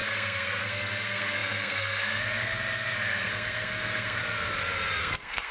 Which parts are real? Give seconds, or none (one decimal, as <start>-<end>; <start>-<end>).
4.2-5.0